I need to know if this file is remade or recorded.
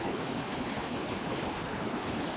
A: remade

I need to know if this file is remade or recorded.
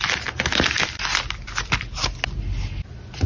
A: recorded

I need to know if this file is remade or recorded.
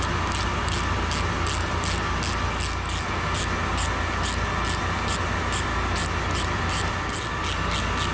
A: recorded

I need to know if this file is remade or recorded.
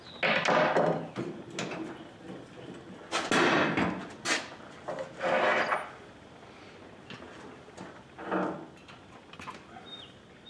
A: recorded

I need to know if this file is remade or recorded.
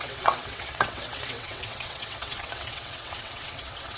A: remade